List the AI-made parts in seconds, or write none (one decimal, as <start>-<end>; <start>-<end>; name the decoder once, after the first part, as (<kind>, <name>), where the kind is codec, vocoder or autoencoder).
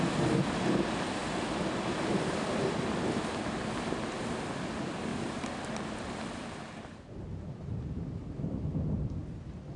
1.2-3.1 (vocoder, BigVGAN v2); 5.1-8.4